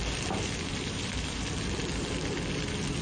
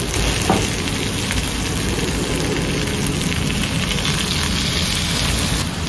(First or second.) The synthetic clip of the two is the first